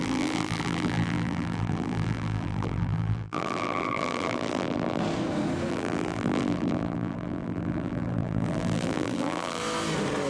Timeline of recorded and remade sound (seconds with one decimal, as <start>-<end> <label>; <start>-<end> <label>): 0.0-5.0 remade; 5.0-5.7 recorded; 5.7-9.6 remade; 9.6-10.3 recorded